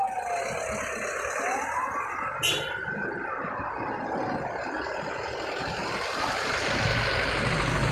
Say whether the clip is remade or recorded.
recorded